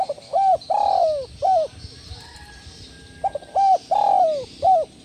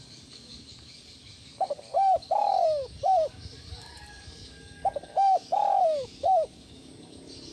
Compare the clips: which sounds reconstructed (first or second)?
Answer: second